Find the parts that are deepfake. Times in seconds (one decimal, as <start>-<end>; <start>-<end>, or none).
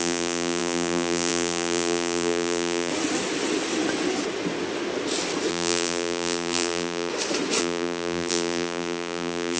0.0-2.9; 5.5-7.1; 7.6-9.6